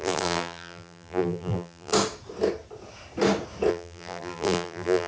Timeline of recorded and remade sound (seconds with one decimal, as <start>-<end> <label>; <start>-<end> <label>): 0.0-1.9 remade; 1.9-3.7 recorded; 3.7-5.1 remade